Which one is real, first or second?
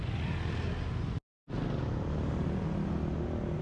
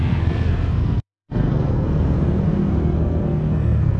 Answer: first